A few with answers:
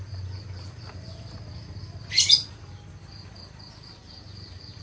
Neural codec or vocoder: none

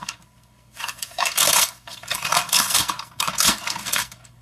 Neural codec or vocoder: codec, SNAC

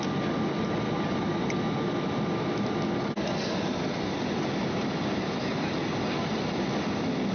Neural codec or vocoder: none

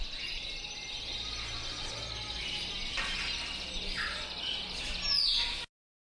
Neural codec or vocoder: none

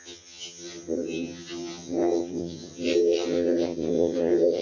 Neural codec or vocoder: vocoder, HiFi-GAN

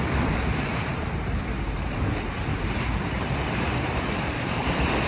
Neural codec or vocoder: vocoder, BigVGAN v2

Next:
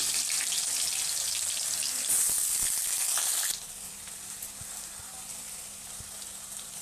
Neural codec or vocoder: none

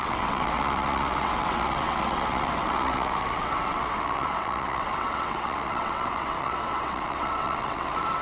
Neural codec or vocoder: vocoder, WaveNeXt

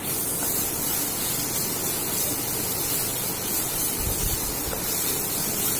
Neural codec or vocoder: none